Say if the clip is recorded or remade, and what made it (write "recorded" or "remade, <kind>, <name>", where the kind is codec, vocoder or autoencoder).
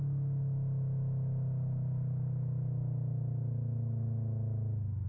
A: recorded